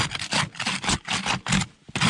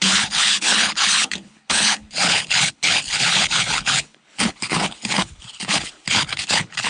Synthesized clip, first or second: second